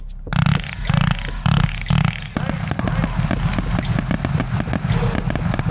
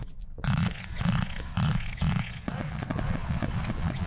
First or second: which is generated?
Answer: second